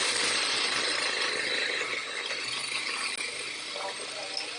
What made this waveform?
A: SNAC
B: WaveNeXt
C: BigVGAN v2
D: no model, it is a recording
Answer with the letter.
D